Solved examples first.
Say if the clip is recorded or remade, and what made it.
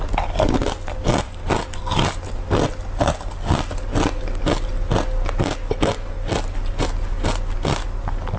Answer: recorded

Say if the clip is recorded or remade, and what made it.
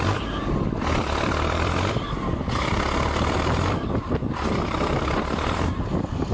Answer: remade, vocoder, BigVGAN v2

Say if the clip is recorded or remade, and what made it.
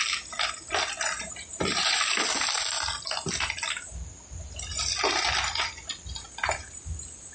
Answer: recorded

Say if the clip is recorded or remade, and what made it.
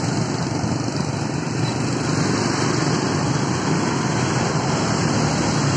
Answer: recorded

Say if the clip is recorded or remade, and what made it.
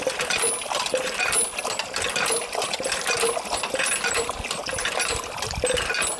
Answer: recorded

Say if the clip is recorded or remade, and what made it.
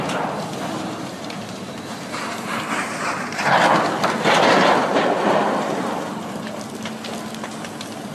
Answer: recorded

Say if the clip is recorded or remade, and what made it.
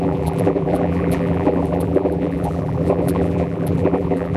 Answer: remade, vocoder, BigVGAN v2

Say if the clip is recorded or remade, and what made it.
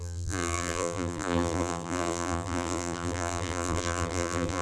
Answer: remade, vocoder, BigVGAN v2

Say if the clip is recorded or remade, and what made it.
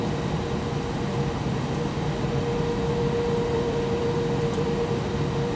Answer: recorded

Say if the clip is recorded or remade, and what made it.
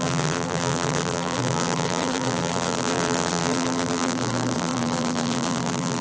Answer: remade, vocoder, BigVGAN v2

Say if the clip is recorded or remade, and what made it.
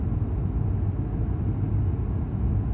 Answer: recorded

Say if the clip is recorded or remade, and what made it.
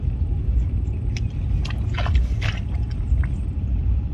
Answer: recorded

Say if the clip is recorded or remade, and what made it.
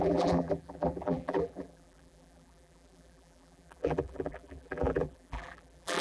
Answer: remade, vocoder, BigVGAN v2